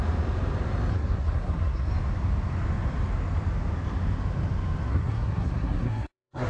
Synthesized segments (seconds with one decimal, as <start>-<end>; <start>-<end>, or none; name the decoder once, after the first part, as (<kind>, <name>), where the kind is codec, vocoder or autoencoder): 0.9-1.9 (codec, SNAC); 4.9-6.5